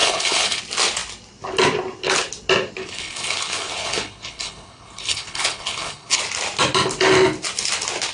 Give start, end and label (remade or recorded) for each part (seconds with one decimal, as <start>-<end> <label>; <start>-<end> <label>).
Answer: 0.0-0.6 remade; 0.6-2.8 recorded; 2.8-6.2 remade; 6.2-8.1 recorded